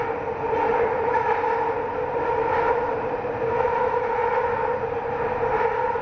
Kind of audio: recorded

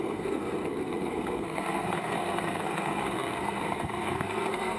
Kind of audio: remade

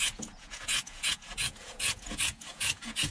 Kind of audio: remade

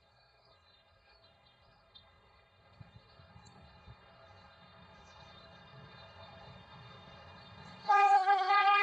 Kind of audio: remade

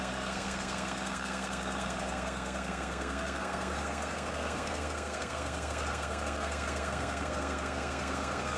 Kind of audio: remade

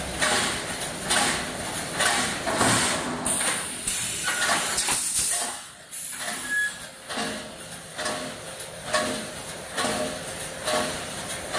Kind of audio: recorded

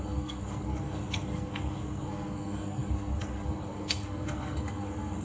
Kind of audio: remade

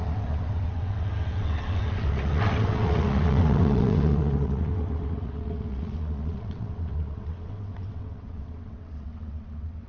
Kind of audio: remade